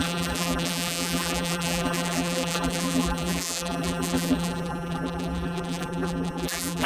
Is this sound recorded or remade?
remade